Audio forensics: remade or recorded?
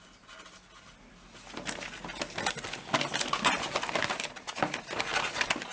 recorded